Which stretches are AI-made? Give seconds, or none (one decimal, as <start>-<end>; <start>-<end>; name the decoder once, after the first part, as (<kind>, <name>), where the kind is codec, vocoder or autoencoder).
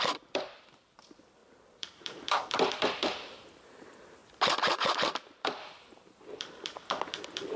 0.0-4.2 (vocoder, BigVGAN v2); 5.9-7.6